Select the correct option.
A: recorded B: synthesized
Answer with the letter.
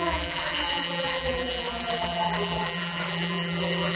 B